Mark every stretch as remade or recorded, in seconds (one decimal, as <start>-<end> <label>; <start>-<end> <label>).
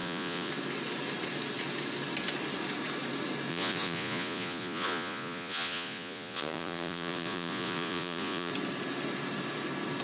0.0-0.5 remade; 0.5-3.5 recorded; 3.5-8.5 remade; 8.5-10.0 recorded